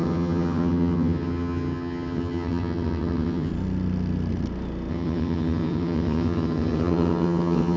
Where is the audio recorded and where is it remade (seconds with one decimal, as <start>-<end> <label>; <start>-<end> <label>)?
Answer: 0.0-3.5 remade; 3.5-4.9 recorded; 4.9-7.8 remade